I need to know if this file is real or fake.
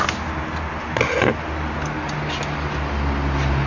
real